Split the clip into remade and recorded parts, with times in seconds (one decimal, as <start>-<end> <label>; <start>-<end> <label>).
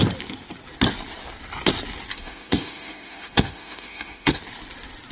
0.0-2.1 recorded; 2.1-4.4 remade; 4.4-5.1 recorded